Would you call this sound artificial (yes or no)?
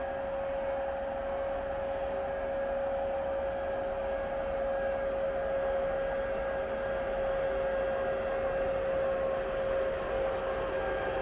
no